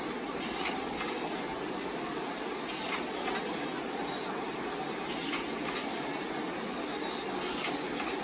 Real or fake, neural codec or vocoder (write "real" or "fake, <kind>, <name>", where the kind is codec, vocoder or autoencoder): real